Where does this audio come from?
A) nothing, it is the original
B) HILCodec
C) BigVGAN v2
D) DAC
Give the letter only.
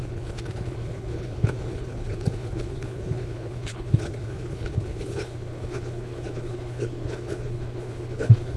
B